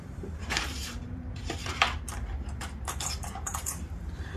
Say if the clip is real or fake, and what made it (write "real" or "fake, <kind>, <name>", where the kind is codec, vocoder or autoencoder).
fake, vocoder, BigVGAN v2